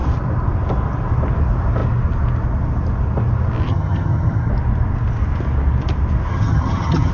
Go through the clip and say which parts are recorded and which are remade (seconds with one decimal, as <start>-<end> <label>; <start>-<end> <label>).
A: 0.0-3.7 recorded; 3.7-4.5 remade; 4.5-6.3 recorded; 6.3-7.1 remade